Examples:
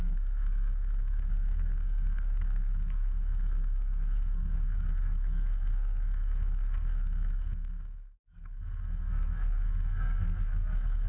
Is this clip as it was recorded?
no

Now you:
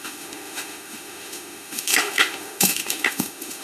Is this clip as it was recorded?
no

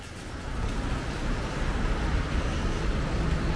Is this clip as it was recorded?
yes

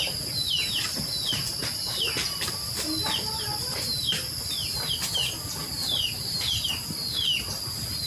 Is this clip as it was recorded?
yes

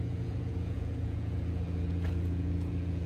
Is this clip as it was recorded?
no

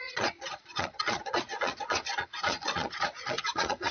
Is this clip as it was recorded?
no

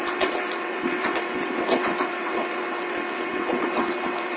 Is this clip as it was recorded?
no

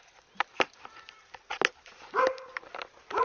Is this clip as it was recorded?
yes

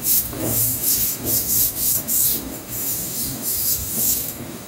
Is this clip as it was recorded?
no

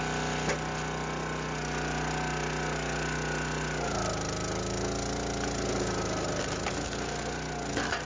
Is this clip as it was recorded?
yes